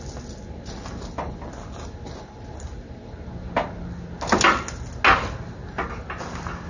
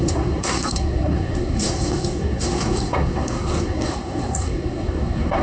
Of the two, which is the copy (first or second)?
second